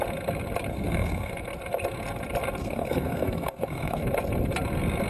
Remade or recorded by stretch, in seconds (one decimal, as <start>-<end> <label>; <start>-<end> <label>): 0.0-0.7 recorded; 0.7-1.3 remade; 1.3-2.6 recorded; 2.6-4.0 remade; 4.0-5.1 recorded